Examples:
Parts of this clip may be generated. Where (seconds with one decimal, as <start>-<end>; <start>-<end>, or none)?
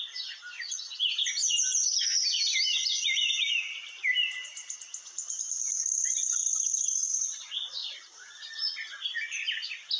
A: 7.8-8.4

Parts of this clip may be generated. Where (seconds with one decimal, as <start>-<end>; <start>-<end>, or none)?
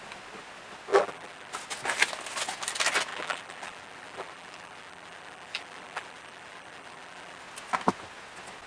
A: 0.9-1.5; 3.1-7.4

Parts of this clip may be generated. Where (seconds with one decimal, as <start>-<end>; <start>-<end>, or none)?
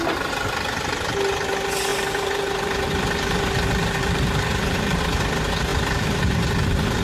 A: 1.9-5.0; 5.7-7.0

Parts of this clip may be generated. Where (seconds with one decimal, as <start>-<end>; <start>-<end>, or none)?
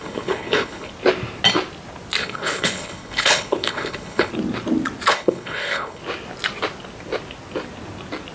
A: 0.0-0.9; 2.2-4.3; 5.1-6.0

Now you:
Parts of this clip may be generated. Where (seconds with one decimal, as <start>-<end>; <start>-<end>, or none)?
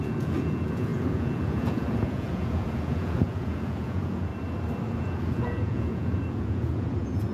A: 0.0-4.3; 5.0-7.3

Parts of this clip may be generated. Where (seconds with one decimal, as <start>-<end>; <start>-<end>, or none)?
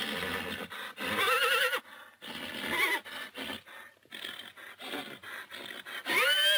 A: none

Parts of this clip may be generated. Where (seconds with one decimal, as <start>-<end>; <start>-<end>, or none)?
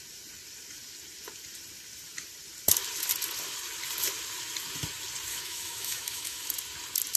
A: 5.3-6.5